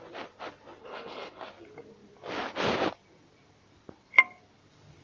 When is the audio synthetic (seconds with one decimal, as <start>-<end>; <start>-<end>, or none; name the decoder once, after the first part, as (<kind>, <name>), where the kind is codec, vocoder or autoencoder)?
0.8-1.4 (codec, HILCodec)